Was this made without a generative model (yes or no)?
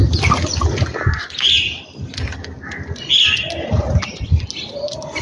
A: yes